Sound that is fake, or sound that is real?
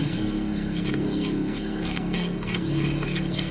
fake